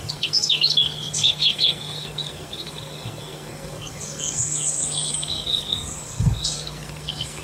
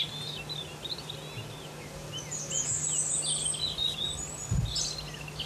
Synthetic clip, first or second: first